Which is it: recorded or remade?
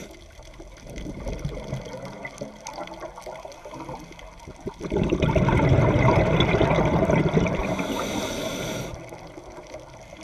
recorded